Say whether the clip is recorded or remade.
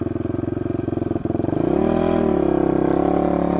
recorded